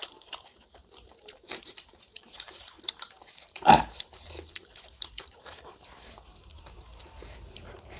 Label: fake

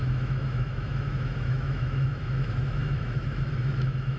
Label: fake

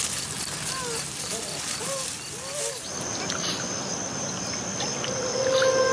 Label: real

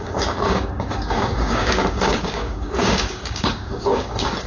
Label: fake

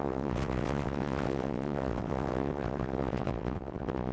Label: fake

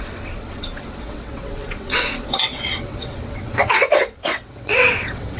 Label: fake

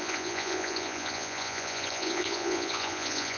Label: fake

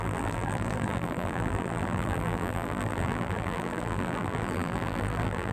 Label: fake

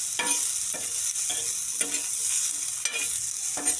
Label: real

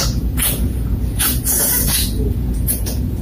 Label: fake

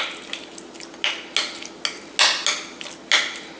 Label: real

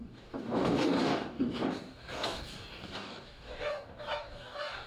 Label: fake